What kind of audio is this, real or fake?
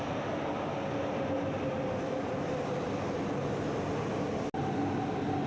real